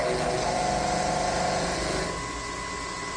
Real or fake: real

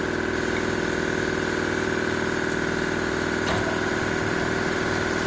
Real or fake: real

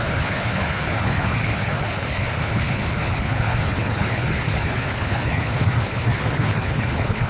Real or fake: fake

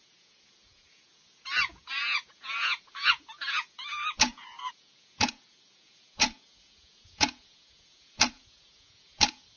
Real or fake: fake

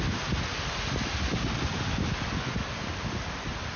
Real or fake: real